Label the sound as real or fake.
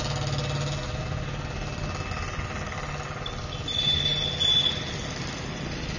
real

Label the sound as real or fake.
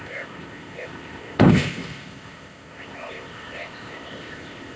fake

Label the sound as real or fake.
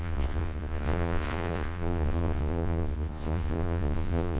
fake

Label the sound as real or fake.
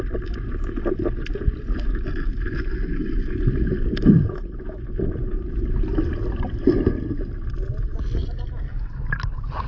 real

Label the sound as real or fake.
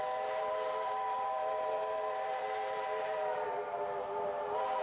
fake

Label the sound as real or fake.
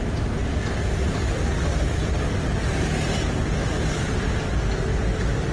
real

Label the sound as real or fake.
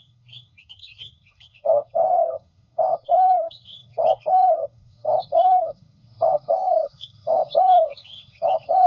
fake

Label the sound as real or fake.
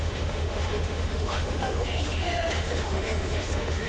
fake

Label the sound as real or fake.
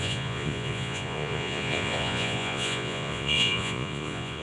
fake